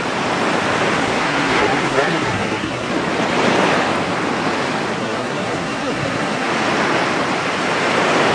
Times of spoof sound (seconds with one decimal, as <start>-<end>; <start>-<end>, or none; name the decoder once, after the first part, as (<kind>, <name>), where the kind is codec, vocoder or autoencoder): 1.0-2.9 (codec, SNAC); 5.0-6.5